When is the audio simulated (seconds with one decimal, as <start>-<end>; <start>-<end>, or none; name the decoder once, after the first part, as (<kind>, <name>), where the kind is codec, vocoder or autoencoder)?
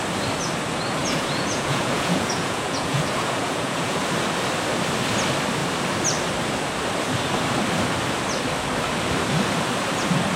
1.0-4.0 (vocoder, Vocos)